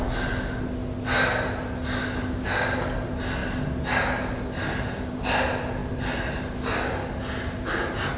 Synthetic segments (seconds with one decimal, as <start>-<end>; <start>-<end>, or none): none